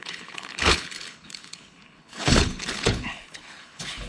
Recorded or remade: remade